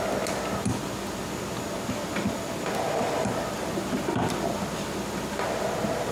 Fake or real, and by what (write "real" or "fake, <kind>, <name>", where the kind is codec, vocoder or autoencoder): real